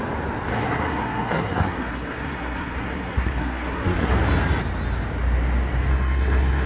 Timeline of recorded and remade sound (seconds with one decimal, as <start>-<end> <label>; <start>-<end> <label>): 0.0-0.5 recorded; 0.5-4.1 remade; 4.1-5.9 recorded; 5.9-6.7 remade